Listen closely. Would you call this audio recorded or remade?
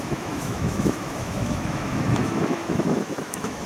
remade